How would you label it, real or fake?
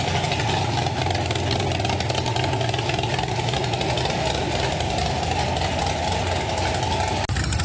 real